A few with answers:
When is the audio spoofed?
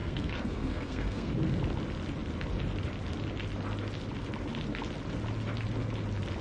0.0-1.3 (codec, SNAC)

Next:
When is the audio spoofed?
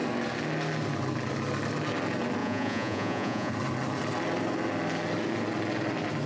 2.4-3.5 (vocoder, Vocos)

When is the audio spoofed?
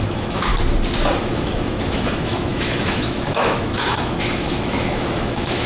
0.0-0.5 (autoencoder, DAC-VAE); 1.2-5.7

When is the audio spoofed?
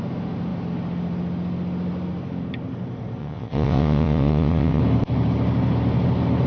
3.2-4.8 (vocoder, WaveNeXt)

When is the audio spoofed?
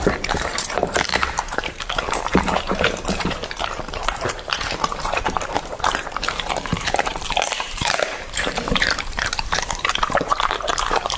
0.0-11.2 (vocoder, BigVGAN v2)